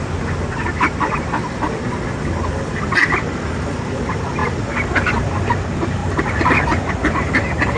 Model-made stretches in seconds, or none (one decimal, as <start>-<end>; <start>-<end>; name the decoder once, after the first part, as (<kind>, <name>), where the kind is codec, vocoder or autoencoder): 0.0-6.0 (vocoder, BigVGAN v2); 6.9-7.8